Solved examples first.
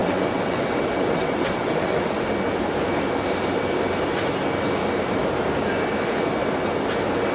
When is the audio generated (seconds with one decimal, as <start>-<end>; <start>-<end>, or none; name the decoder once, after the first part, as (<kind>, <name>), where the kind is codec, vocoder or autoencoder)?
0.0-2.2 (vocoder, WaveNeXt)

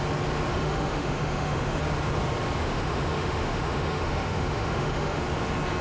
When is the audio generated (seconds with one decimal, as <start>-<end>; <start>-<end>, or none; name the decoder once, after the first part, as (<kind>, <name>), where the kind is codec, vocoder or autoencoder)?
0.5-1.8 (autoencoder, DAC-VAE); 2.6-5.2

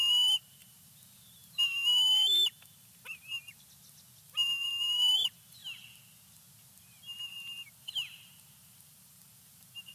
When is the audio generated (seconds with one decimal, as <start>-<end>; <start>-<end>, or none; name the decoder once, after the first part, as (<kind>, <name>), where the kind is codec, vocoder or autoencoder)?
0.0-3.3 (vocoder, BigVGAN v2); 4.2-5.6; 7.3-9.9

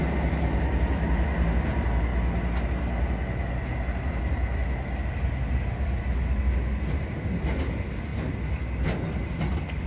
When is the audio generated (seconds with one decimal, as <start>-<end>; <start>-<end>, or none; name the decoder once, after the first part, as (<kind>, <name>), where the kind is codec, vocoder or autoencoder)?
none